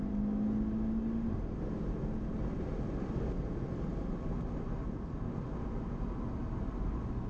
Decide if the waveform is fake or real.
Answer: real